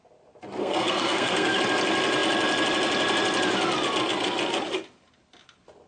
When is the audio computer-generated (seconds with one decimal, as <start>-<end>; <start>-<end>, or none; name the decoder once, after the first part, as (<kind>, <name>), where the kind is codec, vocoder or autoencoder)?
0.6-1.6 (codec, SNAC)